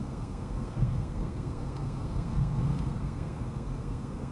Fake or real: fake